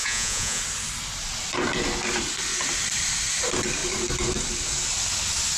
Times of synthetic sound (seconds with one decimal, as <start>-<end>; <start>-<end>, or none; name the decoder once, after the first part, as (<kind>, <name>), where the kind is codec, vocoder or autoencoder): 0.0-0.6 (vocoder, Vocos)